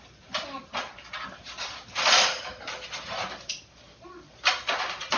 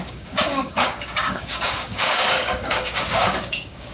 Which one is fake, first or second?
second